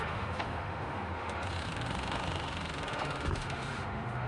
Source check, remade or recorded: remade